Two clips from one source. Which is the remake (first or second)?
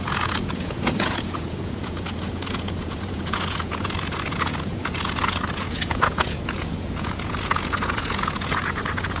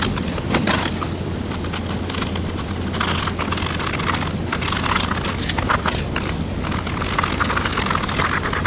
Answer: first